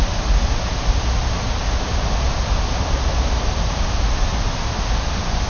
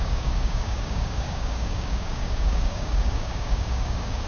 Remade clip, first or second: second